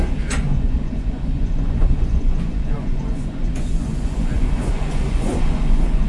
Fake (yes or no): yes